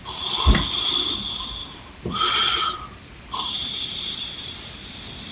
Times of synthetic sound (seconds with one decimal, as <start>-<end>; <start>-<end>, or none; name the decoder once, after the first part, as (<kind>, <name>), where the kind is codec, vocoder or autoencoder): 1.6-4.8 (vocoder, BigVGAN v2)